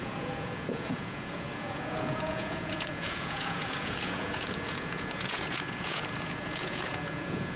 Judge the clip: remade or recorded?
remade